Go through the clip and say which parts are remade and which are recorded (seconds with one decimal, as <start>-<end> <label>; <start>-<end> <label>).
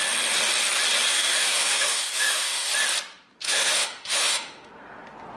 0.0-1.1 recorded; 1.1-2.7 remade; 2.7-3.4 recorded; 3.4-4.7 remade; 4.7-5.4 recorded